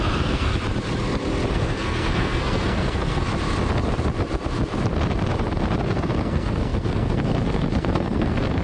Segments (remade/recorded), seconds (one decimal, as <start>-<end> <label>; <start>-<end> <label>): 0.0-0.5 remade; 0.5-1.5 recorded; 1.5-3.3 remade; 3.3-5.8 recorded; 5.8-8.6 remade